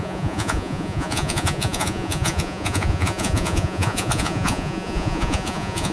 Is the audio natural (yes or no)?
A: no